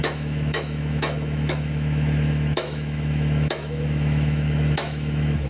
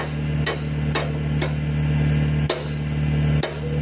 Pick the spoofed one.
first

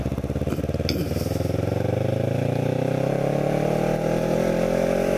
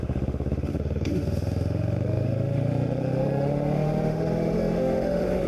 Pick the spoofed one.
second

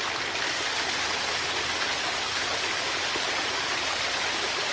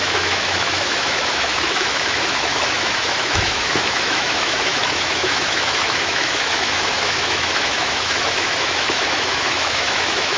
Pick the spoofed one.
second